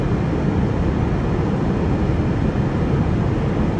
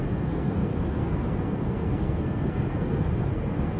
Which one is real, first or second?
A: first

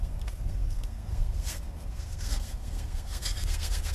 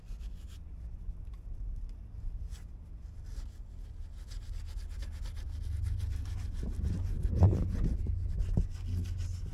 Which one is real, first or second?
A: second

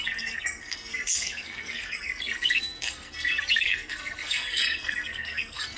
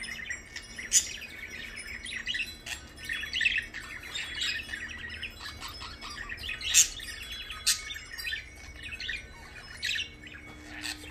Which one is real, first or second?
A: second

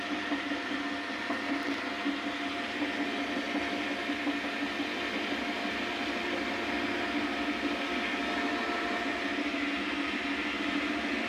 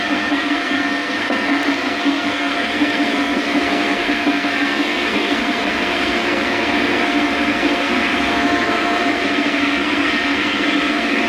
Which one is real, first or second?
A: first